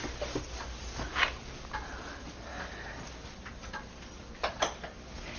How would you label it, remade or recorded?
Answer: recorded